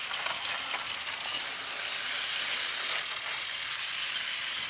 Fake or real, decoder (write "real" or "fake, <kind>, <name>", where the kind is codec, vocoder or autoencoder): real